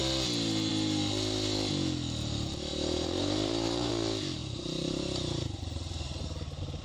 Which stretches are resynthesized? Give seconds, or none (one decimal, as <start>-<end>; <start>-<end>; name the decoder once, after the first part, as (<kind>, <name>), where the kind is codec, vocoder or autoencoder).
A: 2.7-3.9 (vocoder, BigVGAN v2); 4.4-6.8